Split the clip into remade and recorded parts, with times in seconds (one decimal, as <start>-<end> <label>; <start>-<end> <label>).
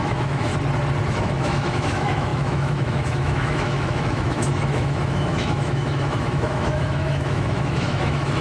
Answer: 0.0-0.5 remade; 0.5-1.1 recorded; 1.1-8.4 remade